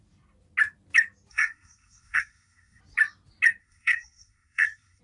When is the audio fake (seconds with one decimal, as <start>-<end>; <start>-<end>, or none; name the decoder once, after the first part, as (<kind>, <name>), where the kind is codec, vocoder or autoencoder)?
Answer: 1.3-2.8 (codec, SNAC); 3.6-5.0